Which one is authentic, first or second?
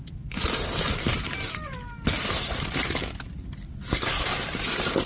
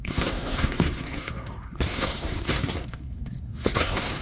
first